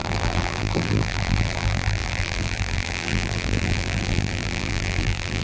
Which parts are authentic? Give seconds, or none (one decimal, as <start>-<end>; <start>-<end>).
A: none